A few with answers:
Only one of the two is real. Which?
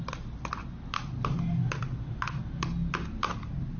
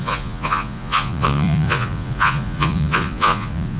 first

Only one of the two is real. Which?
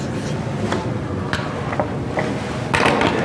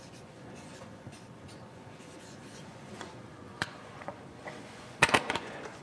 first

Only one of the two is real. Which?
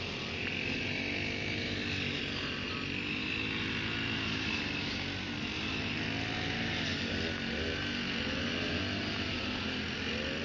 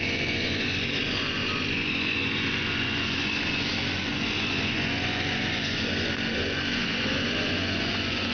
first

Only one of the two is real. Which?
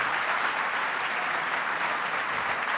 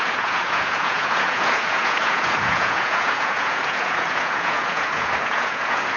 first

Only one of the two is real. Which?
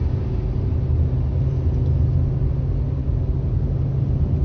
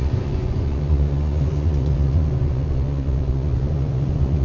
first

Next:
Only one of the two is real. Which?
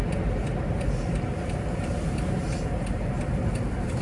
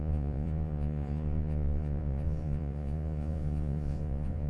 first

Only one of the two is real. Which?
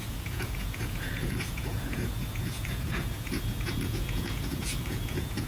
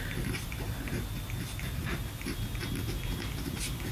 second